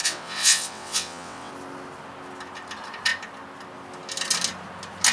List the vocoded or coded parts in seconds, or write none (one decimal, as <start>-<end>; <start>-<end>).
0.0-1.5